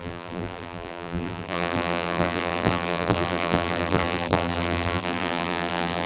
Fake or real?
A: fake